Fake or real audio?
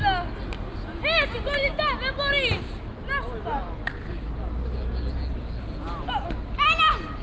real